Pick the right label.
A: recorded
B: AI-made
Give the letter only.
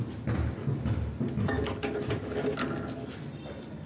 A